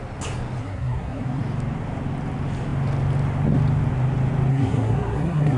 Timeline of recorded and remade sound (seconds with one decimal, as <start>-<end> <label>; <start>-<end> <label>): 0.0-0.6 recorded; 0.6-1.4 remade; 1.4-4.5 recorded; 4.5-5.6 remade